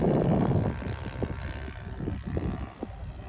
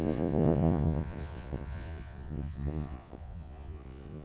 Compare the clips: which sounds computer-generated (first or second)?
second